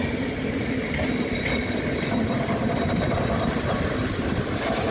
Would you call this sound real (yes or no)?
yes